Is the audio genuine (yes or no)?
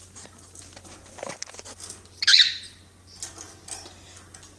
yes